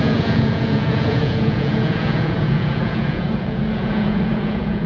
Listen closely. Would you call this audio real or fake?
fake